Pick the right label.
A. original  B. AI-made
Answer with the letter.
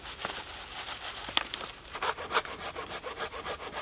A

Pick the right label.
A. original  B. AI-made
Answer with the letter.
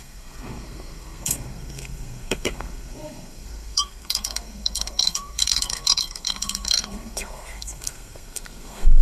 B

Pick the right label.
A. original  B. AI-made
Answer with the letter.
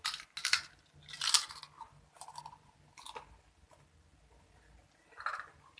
A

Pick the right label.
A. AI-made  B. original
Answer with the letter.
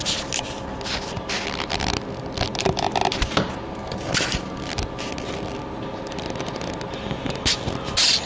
B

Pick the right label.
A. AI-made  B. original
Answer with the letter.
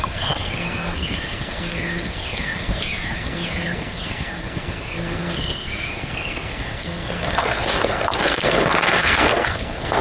A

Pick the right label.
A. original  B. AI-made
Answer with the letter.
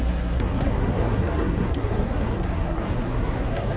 B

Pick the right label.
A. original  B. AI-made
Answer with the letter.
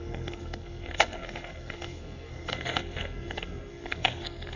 B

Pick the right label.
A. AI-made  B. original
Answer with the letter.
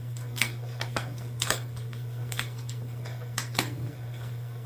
A